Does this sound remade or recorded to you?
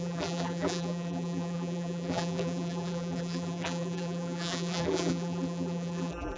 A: remade